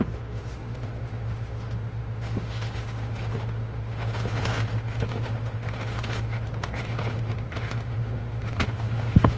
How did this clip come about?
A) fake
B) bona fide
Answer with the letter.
A